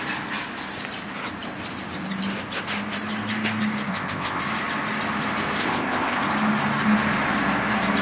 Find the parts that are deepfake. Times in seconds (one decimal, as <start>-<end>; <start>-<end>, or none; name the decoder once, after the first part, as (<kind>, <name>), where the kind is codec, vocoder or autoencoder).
3.9-4.4 (codec, ZipCodec); 5.6-6.2